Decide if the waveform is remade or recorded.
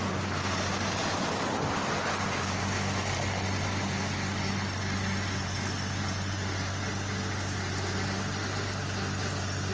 recorded